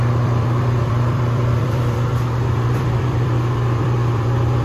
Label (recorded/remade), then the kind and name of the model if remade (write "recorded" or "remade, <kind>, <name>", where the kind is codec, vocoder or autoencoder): remade, vocoder, BigVGAN v2